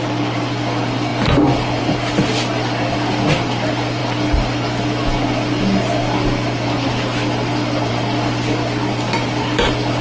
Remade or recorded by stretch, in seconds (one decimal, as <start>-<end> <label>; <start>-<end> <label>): 0.0-10.0 recorded